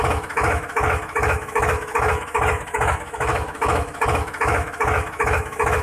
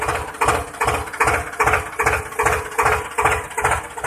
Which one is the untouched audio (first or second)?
second